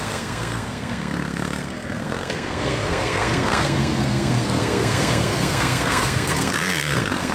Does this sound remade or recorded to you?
remade